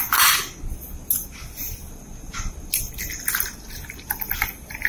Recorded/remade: recorded